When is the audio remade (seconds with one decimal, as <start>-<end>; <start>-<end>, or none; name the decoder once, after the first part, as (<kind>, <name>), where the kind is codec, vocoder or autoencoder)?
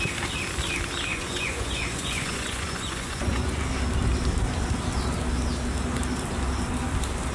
1.1-3.6 (vocoder, Vocos)